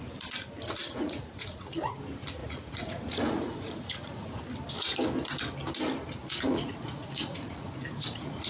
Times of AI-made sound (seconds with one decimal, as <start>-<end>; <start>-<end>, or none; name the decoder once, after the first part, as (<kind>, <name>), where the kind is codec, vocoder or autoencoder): 0.8-2.0 (vocoder, Vocos); 2.4-4.4; 6.2-8.5